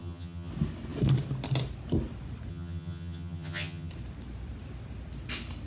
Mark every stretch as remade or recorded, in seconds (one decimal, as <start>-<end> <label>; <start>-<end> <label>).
0.0-0.5 remade; 0.5-2.5 recorded; 2.5-3.9 remade; 3.9-5.7 recorded